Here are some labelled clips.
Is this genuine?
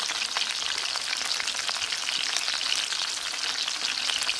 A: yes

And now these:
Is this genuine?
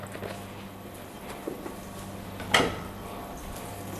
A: yes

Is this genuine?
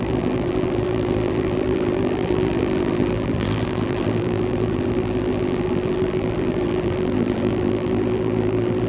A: no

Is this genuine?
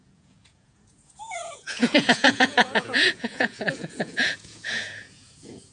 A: no